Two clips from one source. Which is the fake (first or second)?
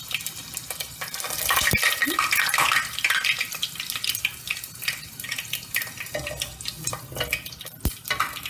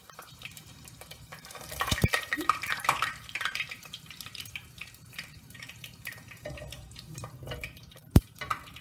second